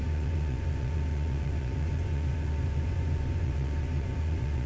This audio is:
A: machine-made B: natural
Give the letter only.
A